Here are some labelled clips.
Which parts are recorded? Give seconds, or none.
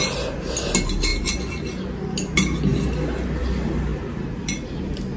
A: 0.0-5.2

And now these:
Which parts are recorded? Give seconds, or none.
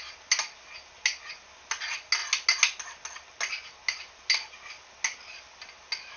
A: 0.0-6.2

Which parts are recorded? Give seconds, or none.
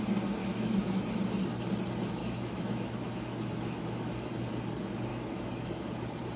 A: 0.0-0.4; 1.0-2.2; 4.5-5.1; 5.9-6.4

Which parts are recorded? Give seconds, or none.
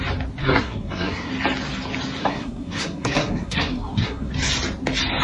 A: 0.0-0.4; 1.3-2.2; 4.3-5.2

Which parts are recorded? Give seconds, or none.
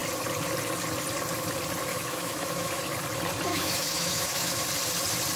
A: 0.0-1.9; 2.8-3.5; 4.6-5.4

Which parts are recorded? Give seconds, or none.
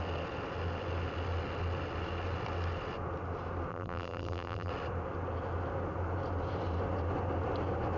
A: 0.0-3.7; 4.7-8.0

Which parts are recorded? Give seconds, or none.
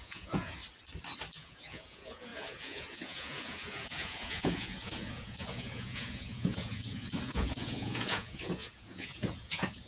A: 0.6-1.3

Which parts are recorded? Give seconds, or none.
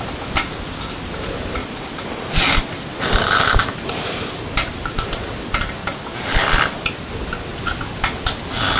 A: 0.0-1.6; 4.4-5.8; 7.1-8.8